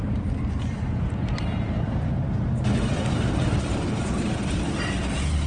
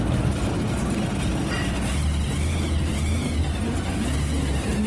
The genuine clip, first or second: second